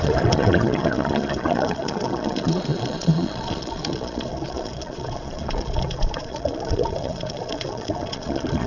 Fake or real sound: fake